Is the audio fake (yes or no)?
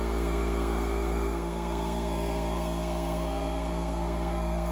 yes